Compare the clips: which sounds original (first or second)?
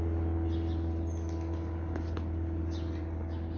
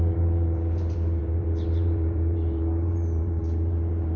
first